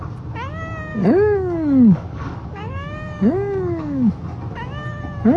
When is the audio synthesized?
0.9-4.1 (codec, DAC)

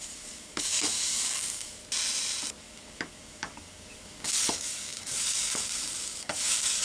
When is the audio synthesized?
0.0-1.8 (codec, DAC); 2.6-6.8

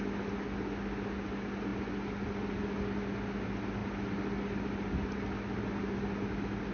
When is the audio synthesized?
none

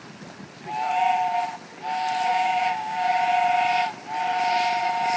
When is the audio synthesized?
2.3-3.1 (codec, DAC)

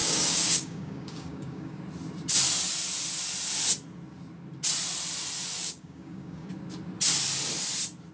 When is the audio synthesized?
0.0-1.8 (codec, DAC); 5.6-6.5

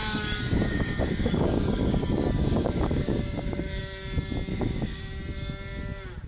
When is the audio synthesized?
0.0-3.8 (codec, DAC); 4.5-5.0